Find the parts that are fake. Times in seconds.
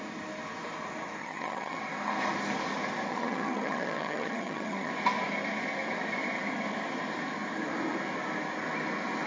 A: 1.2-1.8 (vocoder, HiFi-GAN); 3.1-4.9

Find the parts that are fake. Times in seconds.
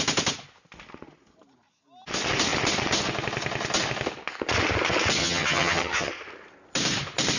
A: 5.2-6.1 (vocoder, HiFi-GAN)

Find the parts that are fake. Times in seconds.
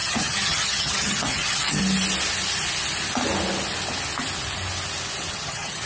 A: 0.0-1.8 (vocoder, HiFi-GAN); 5.3-5.9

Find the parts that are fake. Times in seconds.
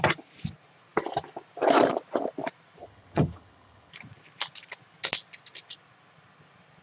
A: 2.8-3.9 (vocoder, HiFi-GAN)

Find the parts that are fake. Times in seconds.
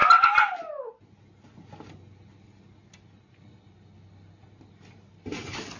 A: none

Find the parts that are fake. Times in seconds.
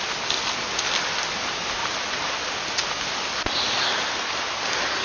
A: none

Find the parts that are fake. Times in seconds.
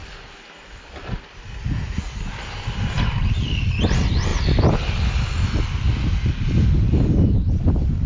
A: none